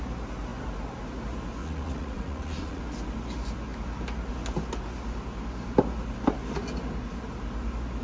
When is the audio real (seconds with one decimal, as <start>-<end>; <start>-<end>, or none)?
0.0-1.6; 2.8-8.0